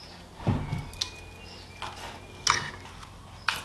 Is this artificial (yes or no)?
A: no